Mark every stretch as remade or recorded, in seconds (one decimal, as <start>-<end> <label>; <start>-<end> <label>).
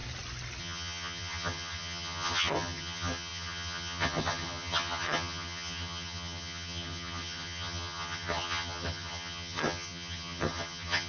0.0-0.6 recorded; 0.6-11.1 remade